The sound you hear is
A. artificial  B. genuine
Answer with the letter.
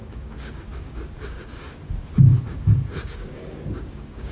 A